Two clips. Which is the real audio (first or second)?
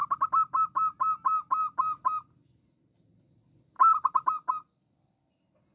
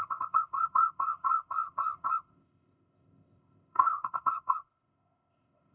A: first